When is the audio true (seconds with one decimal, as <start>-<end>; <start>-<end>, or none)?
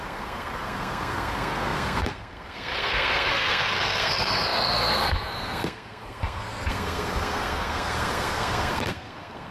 none